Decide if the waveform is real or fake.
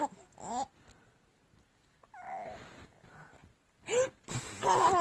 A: real